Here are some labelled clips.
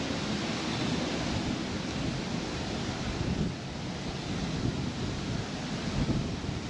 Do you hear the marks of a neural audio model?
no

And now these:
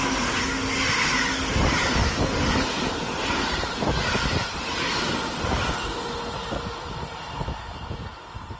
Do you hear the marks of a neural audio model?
no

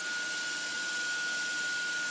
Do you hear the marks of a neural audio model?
no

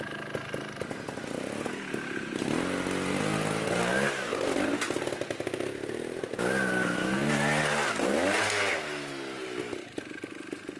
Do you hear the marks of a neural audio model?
no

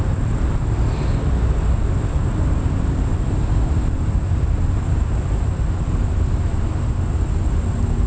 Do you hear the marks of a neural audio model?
no